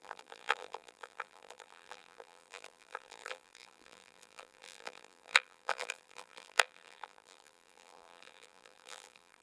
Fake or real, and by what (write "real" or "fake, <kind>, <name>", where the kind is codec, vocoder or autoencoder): fake, vocoder, BigVGAN v2